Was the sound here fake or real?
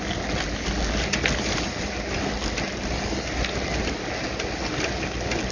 real